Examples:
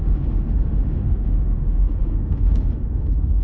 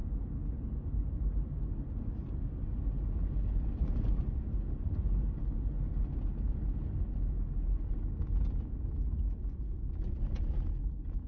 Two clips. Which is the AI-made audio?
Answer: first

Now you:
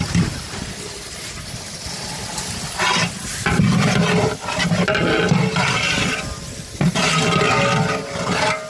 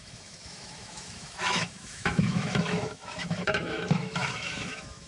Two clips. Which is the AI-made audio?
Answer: second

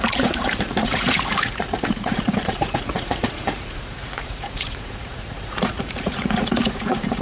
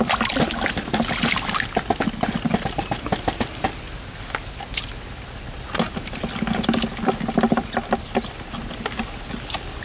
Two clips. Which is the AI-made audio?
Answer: first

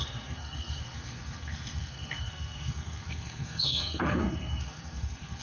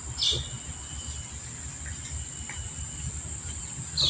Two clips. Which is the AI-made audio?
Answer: first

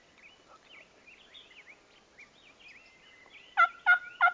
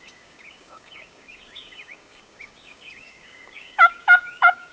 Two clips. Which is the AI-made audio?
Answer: second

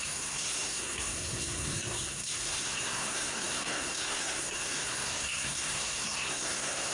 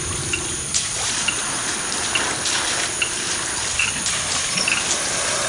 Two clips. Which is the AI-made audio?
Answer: first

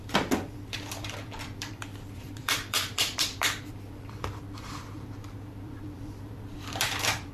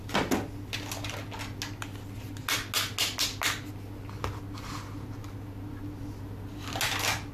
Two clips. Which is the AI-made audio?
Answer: first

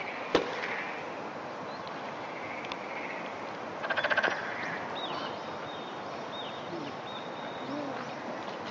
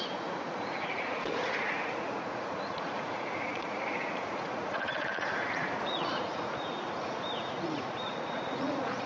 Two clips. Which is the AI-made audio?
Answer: second